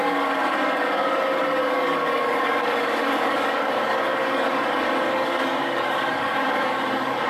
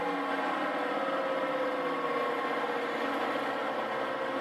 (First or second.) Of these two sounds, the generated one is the first